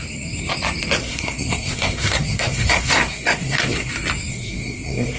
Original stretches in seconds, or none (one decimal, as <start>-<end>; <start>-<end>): 0.0-1.0; 3.9-4.3